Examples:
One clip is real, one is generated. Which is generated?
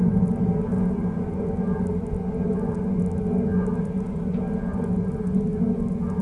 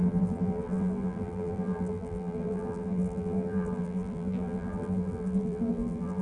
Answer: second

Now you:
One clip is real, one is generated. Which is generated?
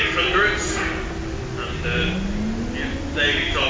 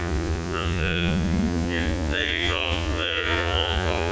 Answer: second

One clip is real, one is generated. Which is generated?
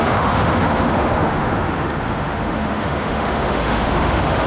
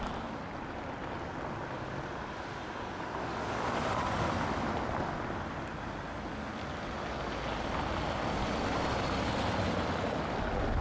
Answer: first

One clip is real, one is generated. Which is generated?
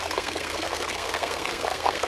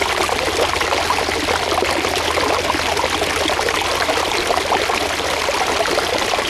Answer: first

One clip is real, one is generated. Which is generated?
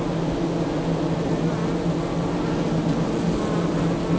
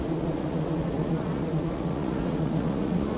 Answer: second